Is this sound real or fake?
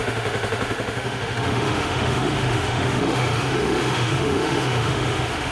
fake